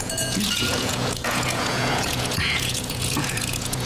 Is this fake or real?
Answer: fake